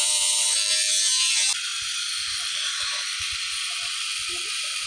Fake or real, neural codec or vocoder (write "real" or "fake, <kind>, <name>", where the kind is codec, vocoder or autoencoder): real